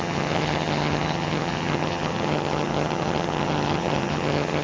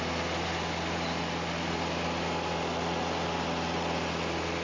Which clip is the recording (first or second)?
second